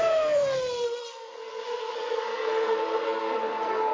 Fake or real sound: fake